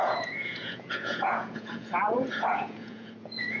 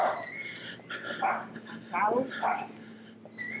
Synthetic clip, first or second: first